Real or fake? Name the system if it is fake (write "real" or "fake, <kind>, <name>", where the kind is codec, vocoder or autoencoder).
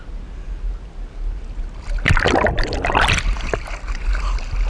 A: real